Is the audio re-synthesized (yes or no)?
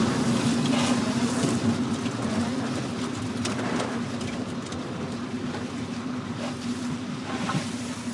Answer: yes